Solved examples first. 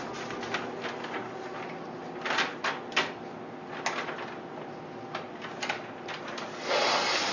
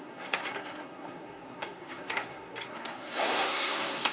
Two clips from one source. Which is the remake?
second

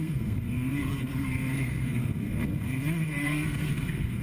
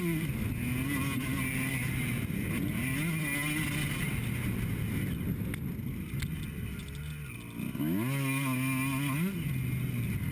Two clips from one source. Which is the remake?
first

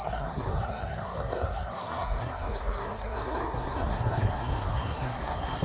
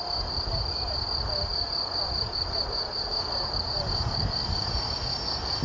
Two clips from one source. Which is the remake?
first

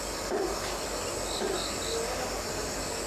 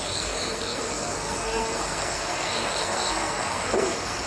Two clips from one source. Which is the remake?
second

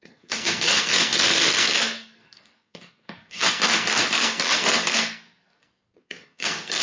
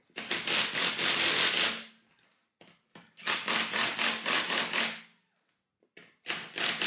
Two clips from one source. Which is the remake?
first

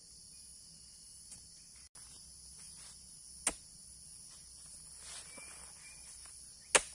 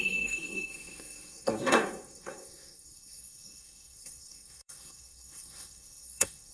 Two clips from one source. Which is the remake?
second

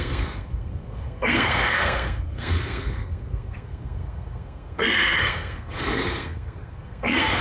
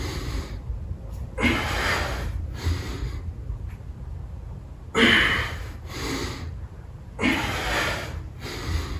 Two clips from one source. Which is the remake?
first